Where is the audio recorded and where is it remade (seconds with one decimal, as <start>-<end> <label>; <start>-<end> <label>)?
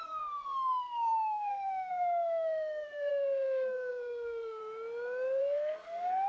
0.0-4.6 remade; 4.6-5.4 recorded; 5.4-6.3 remade